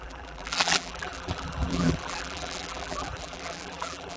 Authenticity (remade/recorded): remade